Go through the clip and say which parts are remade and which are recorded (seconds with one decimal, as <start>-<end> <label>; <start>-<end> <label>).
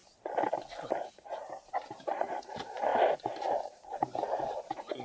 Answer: 0.0-1.1 recorded; 1.1-2.9 remade; 2.9-3.4 recorded; 3.4-5.0 remade